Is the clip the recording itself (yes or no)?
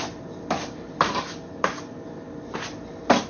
yes